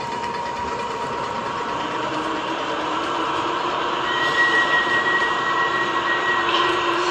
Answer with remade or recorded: remade